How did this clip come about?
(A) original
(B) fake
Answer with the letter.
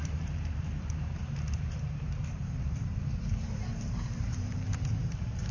B